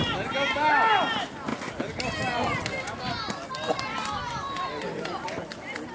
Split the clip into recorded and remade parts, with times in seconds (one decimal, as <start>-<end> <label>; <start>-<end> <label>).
0.0-5.9 recorded